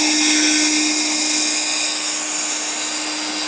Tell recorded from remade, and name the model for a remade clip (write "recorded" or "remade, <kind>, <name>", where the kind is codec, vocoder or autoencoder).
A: recorded